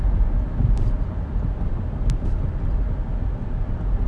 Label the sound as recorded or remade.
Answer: recorded